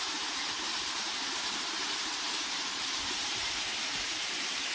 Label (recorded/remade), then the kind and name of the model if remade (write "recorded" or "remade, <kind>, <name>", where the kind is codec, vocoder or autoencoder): remade, vocoder, BigVGAN v2